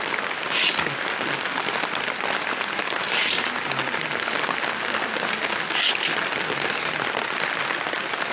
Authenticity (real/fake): real